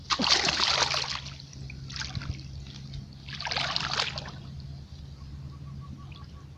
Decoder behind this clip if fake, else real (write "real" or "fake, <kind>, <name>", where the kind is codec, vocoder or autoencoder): real